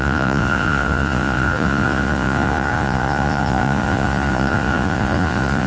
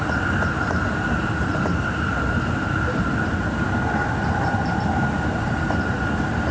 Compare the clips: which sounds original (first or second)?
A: second